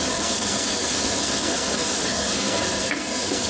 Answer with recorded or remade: remade